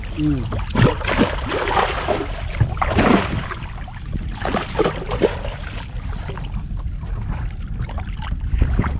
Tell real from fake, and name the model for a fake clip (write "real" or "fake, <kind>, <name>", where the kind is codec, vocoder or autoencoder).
real